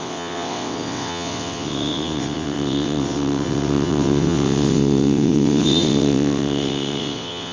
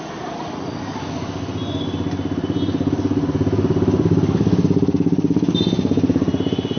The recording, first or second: second